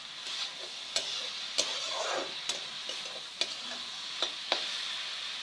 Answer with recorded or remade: recorded